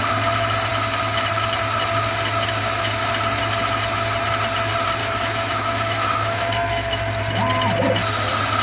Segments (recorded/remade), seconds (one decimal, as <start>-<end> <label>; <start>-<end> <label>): 0.0-5.0 recorded; 5.0-7.2 remade; 7.2-8.6 recorded